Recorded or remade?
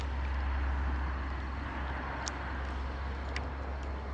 recorded